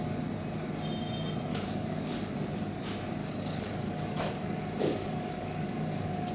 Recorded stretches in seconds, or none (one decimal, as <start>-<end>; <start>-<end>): 0.0-1.5; 2.3-3.2